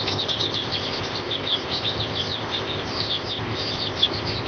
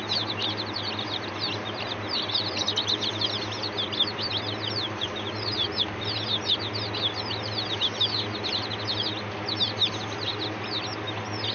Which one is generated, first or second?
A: first